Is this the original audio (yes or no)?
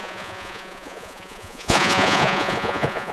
no